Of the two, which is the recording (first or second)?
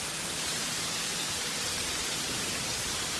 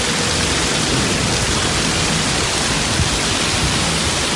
second